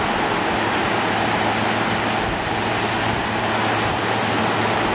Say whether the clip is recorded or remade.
recorded